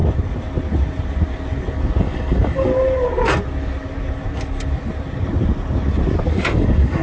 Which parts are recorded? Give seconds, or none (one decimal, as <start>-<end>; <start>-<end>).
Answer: 0.0-2.0; 2.7-6.3